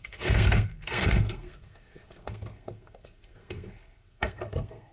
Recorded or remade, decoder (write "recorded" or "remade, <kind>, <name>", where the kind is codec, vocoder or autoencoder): remade, codec, SNAC